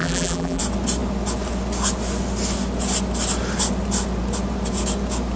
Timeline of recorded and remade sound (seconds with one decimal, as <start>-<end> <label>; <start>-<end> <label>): 0.0-0.6 remade; 0.6-5.4 recorded